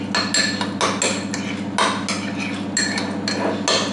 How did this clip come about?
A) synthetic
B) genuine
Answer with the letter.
B